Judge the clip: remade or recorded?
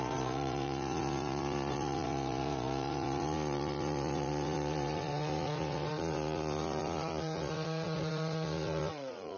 remade